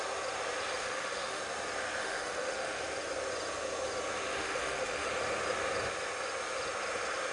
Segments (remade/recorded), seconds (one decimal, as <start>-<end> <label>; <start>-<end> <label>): 0.0-0.8 recorded; 0.8-1.4 remade; 1.4-2.0 recorded; 2.0-2.8 remade; 2.8-4.3 recorded; 4.3-5.1 remade; 5.1-7.3 recorded